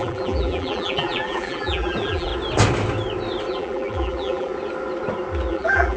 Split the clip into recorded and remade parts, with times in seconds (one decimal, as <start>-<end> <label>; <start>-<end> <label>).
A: 0.0-2.3 remade; 2.3-3.5 recorded; 3.5-4.5 remade; 4.5-5.5 recorded; 5.5-6.0 remade